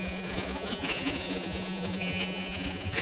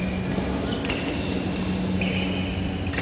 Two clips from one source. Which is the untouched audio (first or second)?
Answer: second